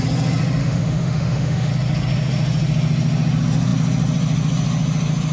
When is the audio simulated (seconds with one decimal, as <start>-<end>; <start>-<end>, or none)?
0.6-1.7